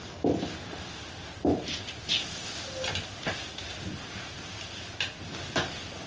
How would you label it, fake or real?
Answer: real